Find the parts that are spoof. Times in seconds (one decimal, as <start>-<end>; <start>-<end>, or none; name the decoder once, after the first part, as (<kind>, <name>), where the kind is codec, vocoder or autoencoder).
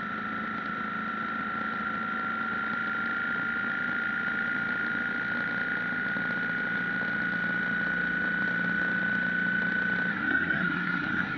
10.1-11.4 (codec, SNAC)